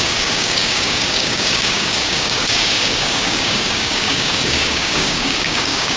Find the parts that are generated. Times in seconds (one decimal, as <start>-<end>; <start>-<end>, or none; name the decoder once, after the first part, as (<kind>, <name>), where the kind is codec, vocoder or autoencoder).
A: 0.0-6.0 (codec, DAC)

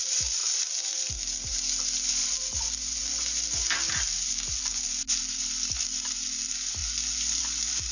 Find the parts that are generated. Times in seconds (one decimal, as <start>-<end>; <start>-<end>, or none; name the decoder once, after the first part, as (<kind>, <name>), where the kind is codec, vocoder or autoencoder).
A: 0.4-1.1 (vocoder, BigVGAN v2); 2.2-3.0; 4.7-5.2; 6.8-7.4

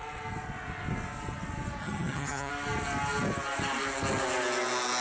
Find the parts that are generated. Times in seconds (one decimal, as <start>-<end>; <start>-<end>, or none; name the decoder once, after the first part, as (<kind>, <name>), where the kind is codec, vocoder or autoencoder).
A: 1.8-2.5 (vocoder, HiFi-GAN)

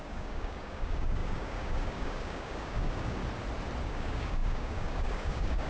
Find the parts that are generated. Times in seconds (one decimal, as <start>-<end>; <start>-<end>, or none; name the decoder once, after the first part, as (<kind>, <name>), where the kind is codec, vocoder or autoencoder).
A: 0.0-3.2 (codec, DAC); 3.8-5.7